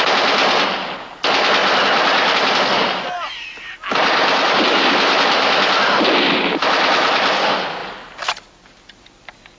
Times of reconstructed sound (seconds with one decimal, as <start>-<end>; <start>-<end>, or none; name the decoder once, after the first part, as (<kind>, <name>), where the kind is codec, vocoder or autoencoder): none